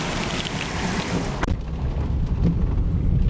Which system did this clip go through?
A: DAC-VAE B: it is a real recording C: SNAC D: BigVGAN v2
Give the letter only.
B